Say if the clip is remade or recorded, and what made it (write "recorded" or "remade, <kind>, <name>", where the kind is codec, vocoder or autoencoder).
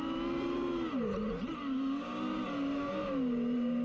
recorded